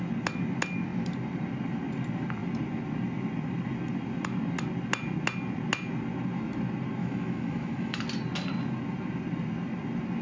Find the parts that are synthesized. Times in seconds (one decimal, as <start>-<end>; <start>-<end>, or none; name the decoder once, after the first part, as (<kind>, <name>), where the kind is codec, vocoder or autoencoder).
7.0-8.0 (autoencoder, DAC-VAE)